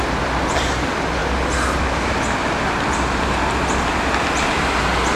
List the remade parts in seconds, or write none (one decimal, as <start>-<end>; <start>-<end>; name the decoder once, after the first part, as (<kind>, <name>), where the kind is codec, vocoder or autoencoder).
none